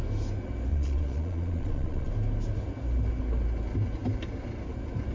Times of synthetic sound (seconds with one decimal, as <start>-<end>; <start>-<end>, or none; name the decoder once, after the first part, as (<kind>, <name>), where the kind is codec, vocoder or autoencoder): 0.7-2.1 (vocoder, Vocos)